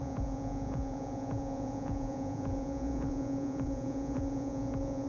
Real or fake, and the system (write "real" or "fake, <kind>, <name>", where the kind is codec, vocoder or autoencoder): fake, vocoder, Vocos